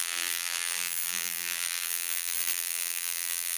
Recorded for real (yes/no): no